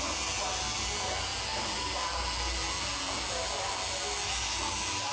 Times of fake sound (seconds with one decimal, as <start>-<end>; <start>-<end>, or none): none